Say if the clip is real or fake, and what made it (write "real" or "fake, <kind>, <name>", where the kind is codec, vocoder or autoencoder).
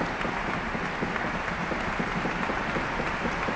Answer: real